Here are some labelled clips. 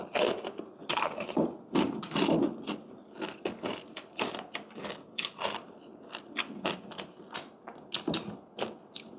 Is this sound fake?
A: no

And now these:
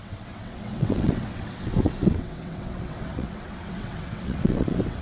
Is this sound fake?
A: yes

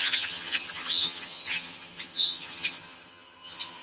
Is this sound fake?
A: yes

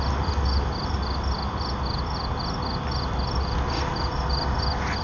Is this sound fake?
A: no